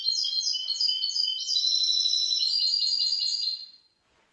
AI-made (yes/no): yes